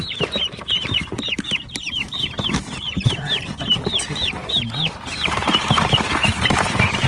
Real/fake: fake